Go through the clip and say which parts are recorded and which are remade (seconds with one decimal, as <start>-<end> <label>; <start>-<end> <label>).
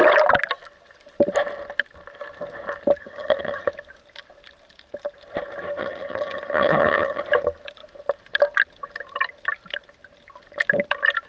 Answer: 0.0-3.0 recorded; 3.0-3.7 remade; 3.7-5.8 recorded; 5.8-7.2 remade; 7.2-11.3 recorded